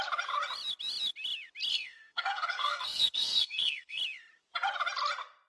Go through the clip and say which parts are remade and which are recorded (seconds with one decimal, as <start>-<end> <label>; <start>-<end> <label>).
0.0-1.7 recorded; 1.7-4.0 remade; 4.0-5.5 recorded